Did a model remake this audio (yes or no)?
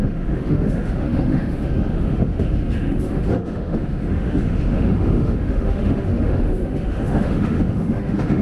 yes